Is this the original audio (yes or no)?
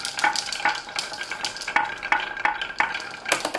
yes